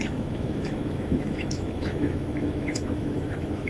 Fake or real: fake